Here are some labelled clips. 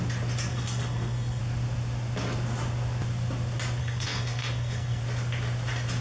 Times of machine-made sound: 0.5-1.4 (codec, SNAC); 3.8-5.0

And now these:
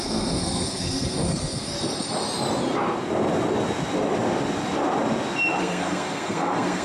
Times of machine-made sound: 0.0-1.7 (codec, SNAC); 5.6-6.8

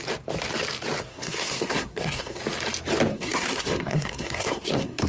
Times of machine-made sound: 1.1-2.4 (codec, SNAC); 3.1-5.1

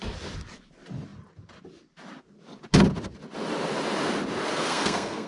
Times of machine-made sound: 4.5-5.3 (codec, SNAC)

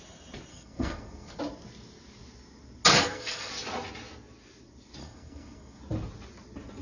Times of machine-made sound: 0.5-1.4 (codec, SNAC); 2.9-3.5; 5.0-5.8

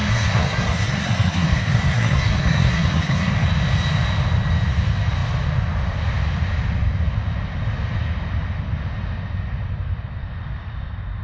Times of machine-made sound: 0.0-3.3 (codec, SNAC)

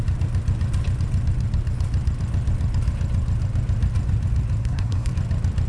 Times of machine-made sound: 4.6-5.1 (codec, SNAC)

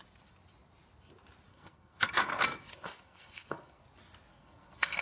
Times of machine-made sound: 1.5-2.3 (codec, SNAC); 2.7-3.8; 4.3-5.0